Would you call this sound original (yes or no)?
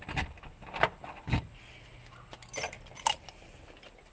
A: yes